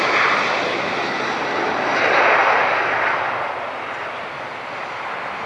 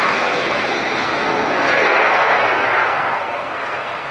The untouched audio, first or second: first